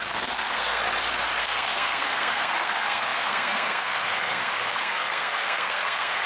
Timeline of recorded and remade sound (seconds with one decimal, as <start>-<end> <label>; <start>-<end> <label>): 0.0-0.8 remade; 0.8-1.4 recorded; 1.4-6.3 remade